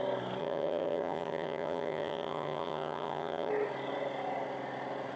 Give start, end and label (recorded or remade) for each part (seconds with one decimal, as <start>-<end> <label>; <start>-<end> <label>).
0.0-0.4 recorded; 0.4-3.5 remade; 3.5-5.2 recorded